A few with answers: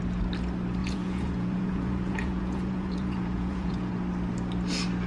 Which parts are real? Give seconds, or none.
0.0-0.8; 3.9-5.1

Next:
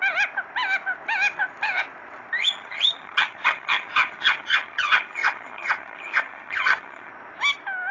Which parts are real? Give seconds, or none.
0.0-2.4; 7.1-7.9

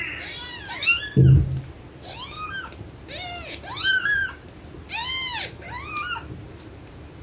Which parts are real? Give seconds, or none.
0.0-7.2

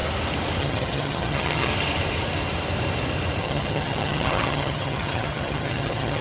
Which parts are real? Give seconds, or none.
0.0-0.6; 1.7-3.4

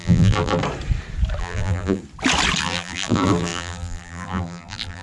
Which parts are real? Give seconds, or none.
0.6-1.4; 2.0-2.6

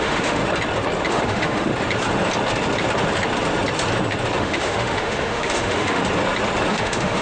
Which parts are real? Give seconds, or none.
0.4-1.1; 1.7-4.4; 6.0-6.7

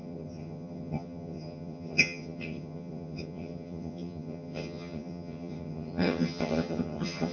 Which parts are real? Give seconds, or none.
none